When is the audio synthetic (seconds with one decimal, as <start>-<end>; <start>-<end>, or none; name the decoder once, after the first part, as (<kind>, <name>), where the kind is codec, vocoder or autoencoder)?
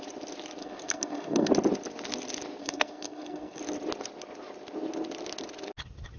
0.6-1.5 (codec, SNAC); 2.6-3.6